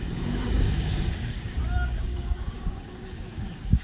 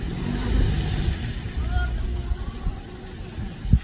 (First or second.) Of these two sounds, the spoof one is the first